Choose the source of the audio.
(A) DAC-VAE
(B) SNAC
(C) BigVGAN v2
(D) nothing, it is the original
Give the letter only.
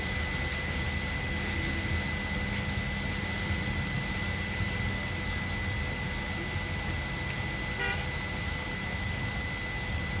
D